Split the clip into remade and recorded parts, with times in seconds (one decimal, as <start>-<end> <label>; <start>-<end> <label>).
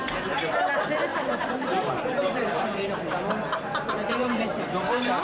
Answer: 0.0-1.1 recorded; 1.1-3.0 remade; 3.0-4.2 recorded; 4.2-5.2 remade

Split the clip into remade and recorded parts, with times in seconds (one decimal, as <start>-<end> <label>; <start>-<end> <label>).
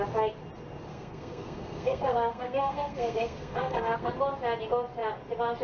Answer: 0.0-0.9 recorded; 0.9-4.1 remade; 4.1-5.6 recorded